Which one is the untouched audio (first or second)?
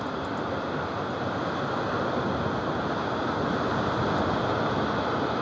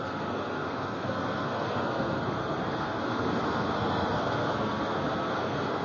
first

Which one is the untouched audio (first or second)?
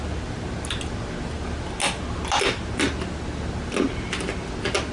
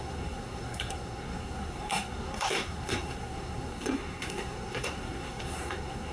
first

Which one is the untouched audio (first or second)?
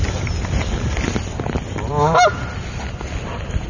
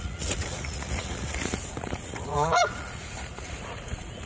first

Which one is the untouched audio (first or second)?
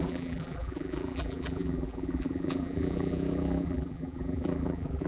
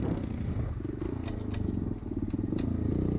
second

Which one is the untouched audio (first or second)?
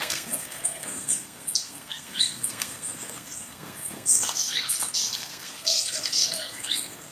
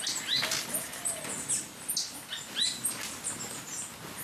second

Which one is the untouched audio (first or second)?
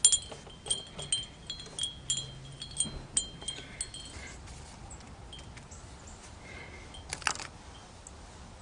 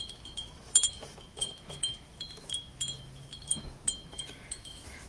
first